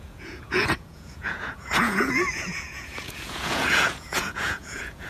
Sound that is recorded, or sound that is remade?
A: remade